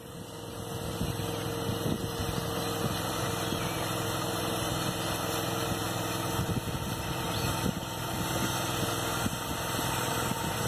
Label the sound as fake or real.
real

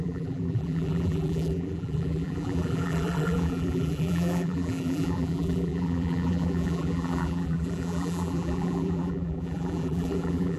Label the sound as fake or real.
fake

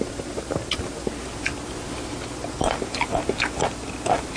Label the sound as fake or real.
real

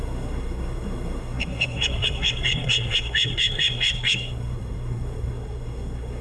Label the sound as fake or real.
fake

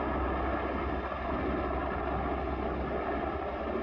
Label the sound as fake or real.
real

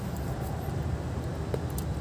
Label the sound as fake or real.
real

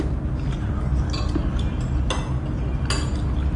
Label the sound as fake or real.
real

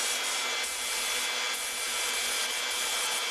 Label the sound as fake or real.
real